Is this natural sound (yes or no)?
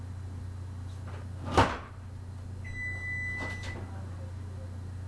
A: yes